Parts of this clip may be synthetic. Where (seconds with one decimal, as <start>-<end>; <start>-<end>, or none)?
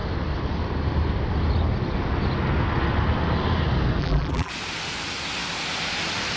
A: 4.0-4.5